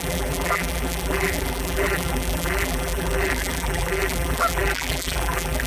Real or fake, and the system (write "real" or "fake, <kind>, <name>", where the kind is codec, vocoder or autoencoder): fake, vocoder, BigVGAN v2